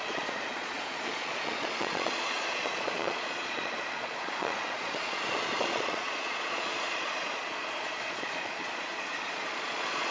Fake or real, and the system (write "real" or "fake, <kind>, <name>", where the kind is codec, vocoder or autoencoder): fake, vocoder, Vocos